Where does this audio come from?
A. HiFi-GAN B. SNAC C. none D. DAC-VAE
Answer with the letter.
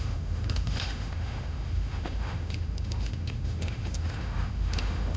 D